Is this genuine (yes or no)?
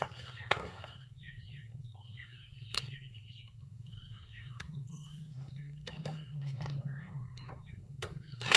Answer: no